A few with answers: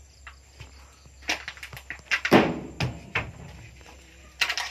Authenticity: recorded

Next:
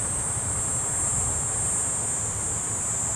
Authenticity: recorded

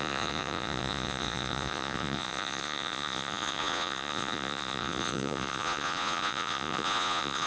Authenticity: remade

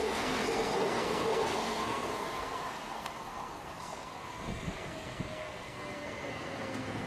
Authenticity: remade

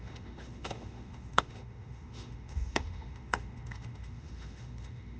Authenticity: remade